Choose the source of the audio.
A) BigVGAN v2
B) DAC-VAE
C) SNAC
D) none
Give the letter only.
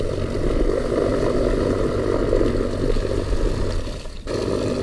D